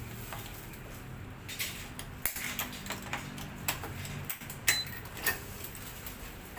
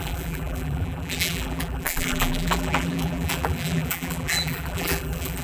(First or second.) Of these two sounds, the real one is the first